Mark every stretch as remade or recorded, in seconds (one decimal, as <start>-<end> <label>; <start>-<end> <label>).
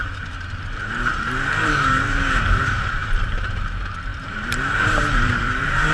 0.0-5.9 remade